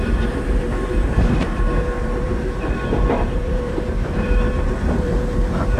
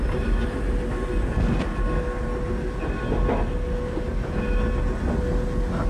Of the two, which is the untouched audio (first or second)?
second